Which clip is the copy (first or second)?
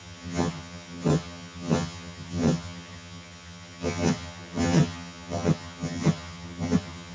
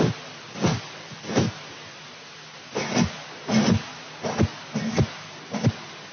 first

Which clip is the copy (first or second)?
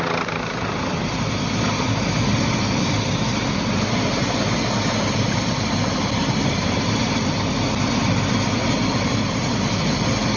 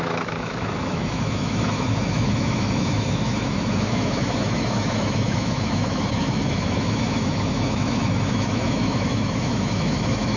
second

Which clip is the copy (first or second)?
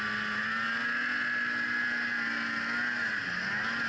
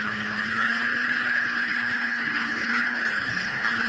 second